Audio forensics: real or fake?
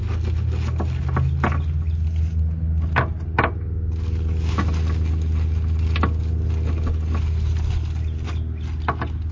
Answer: real